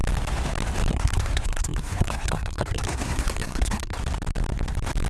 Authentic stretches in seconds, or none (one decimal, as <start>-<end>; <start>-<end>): 0.0-0.9; 4.0-5.1